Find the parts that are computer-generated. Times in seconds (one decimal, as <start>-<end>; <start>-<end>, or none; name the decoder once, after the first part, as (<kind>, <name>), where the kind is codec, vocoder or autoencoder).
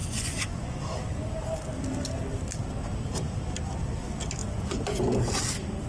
0.0-0.9 (vocoder, Vocos); 4.4-5.2